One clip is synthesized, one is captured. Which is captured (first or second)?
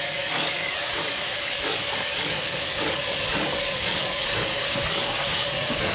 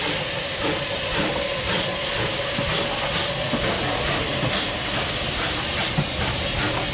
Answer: second